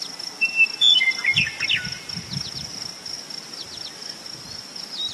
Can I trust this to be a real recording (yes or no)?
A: yes